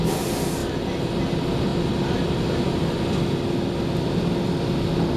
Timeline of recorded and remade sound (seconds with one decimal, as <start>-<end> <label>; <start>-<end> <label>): 0.0-5.2 recorded